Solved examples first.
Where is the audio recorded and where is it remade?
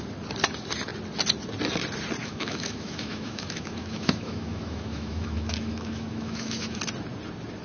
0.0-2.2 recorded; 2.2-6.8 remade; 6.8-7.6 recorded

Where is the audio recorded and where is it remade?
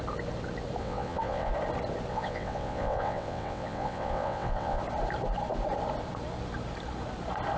0.0-0.8 recorded; 0.8-1.5 remade; 1.5-2.1 recorded; 2.1-4.8 remade; 4.8-7.6 recorded